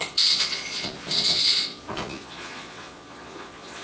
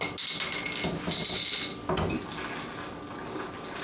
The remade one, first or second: first